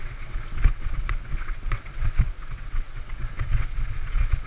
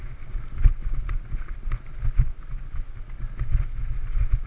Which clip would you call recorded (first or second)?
second